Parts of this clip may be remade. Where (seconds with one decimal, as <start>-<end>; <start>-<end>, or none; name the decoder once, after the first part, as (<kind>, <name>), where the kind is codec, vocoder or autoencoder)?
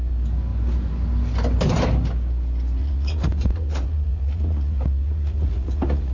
2.8-6.1 (vocoder, Vocos)